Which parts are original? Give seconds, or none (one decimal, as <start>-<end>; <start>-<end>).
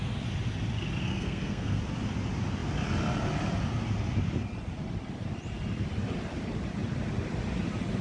0.0-1.0; 1.8-8.0